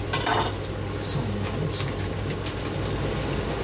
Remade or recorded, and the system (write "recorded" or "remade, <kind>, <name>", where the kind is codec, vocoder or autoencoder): recorded